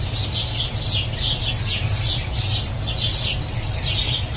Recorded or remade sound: recorded